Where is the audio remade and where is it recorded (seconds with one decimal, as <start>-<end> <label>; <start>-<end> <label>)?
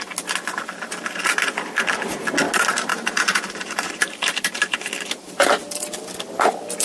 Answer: 0.0-2.9 recorded; 2.9-4.9 remade; 4.9-6.8 recorded